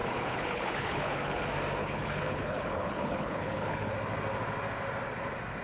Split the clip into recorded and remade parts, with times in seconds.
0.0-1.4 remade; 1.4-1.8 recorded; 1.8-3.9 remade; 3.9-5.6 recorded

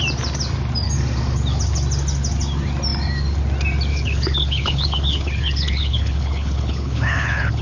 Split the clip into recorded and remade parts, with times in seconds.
0.0-3.9 recorded; 3.9-7.6 remade

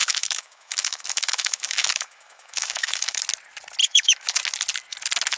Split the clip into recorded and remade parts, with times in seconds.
0.0-3.2 remade; 3.2-3.8 recorded; 3.8-4.4 remade; 4.4-5.4 recorded